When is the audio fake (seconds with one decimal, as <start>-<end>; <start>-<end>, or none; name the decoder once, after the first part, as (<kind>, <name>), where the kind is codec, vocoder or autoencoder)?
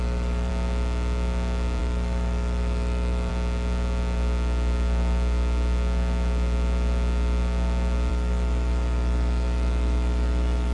0.0-0.5 (autoencoder, DAC-VAE); 1.8-3.3; 8.1-10.7